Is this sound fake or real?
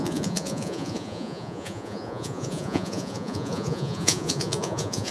fake